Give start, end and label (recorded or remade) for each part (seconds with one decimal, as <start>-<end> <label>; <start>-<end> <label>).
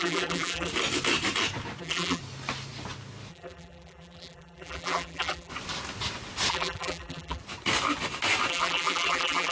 0.0-0.7 remade; 0.7-1.8 recorded; 1.8-2.2 remade; 2.2-3.3 recorded; 3.3-5.5 remade; 5.5-6.5 recorded; 6.5-7.4 remade; 7.4-8.5 recorded; 8.5-9.5 remade